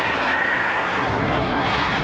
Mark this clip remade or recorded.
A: remade